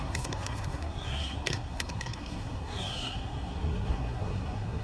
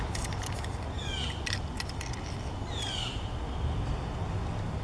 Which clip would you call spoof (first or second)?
first